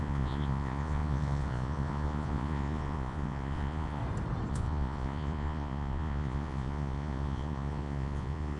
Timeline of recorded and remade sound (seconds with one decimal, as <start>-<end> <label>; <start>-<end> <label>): 0.0-4.0 remade; 4.0-4.5 recorded; 4.5-8.6 remade